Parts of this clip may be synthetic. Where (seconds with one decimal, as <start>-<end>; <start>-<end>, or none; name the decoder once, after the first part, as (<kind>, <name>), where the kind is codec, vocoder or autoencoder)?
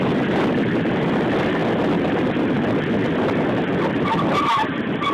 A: none